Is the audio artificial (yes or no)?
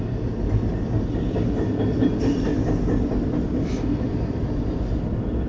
no